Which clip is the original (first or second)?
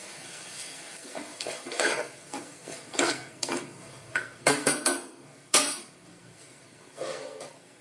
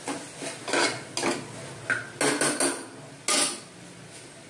second